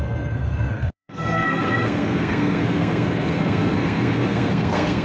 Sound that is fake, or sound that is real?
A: fake